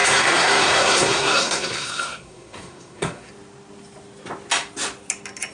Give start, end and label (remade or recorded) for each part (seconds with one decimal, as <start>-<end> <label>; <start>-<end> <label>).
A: 0.0-3.3 remade; 3.3-5.5 recorded